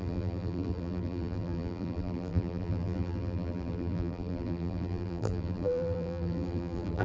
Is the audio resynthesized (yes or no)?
yes